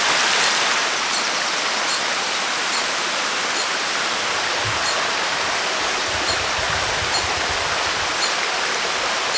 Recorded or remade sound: recorded